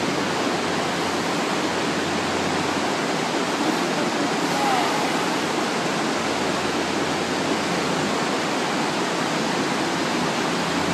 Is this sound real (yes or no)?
yes